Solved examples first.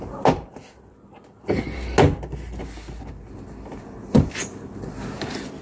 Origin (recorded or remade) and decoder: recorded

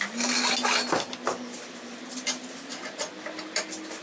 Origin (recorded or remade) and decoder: recorded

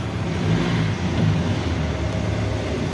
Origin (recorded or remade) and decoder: recorded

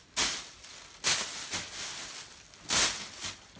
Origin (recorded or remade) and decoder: recorded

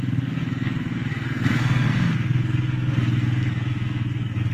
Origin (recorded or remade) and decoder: remade, codec, SNAC